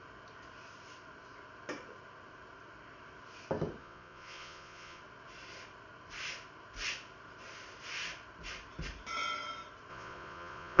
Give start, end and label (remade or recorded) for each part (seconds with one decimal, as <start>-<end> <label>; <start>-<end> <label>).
0.0-3.8 recorded; 3.8-5.0 remade; 5.0-9.9 recorded; 9.9-10.8 remade